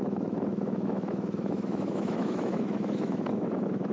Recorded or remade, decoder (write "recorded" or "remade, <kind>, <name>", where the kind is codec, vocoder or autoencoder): remade, autoencoder, DAC-VAE